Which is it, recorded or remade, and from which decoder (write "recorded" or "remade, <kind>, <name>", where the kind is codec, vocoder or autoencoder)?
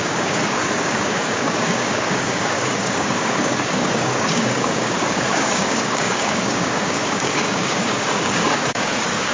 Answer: remade, codec, DAC